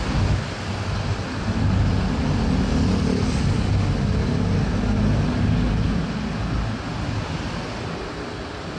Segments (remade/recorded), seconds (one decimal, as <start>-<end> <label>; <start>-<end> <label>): 0.0-8.8 recorded